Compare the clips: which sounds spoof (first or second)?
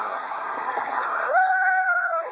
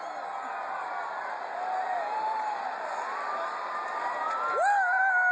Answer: first